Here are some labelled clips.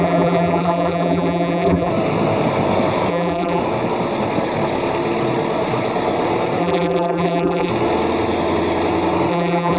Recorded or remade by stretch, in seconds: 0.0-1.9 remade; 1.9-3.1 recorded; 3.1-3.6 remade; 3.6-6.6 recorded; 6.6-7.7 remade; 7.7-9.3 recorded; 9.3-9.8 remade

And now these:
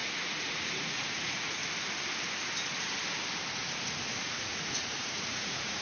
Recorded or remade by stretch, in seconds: 0.0-1.6 remade; 1.6-4.2 recorded; 4.2-5.8 remade

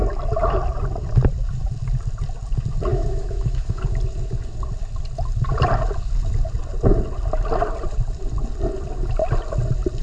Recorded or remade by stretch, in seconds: 0.0-2.9 recorded; 2.9-3.8 remade; 3.8-10.0 recorded

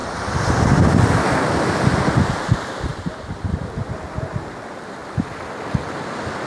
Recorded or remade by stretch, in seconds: 0.0-2.3 remade; 2.3-2.9 recorded; 2.9-3.6 remade; 3.6-5.0 recorded; 5.0-5.5 remade; 5.5-6.5 recorded